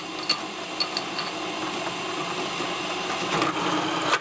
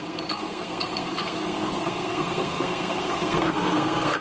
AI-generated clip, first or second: second